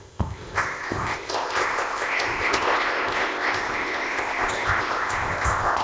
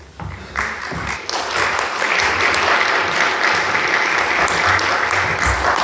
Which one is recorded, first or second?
second